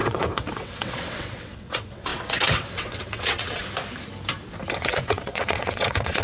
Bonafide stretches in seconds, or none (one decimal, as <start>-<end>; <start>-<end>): 3.6-4.7